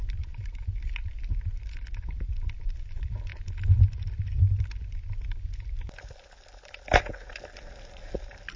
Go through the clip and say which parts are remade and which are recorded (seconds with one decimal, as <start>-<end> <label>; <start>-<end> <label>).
0.0-0.5 remade; 0.5-8.6 recorded